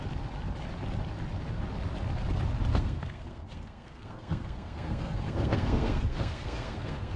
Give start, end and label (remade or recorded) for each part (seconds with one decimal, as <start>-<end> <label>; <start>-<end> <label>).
0.0-2.7 recorded; 2.7-7.2 remade